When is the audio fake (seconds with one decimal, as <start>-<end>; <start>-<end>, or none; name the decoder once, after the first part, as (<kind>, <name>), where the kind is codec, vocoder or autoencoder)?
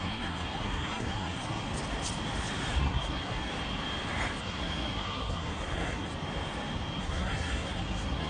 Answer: 0.0-1.6 (codec, SNAC); 2.8-3.5; 4.4-6.1; 7.0-8.3